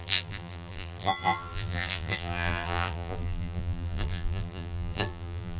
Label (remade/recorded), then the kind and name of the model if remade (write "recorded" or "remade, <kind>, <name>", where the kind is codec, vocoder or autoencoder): remade, vocoder, BigVGAN v2